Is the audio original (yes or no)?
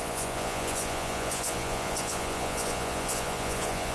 no